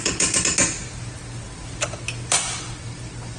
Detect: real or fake real